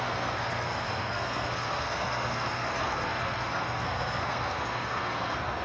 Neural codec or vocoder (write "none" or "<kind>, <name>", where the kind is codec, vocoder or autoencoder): codec, SNAC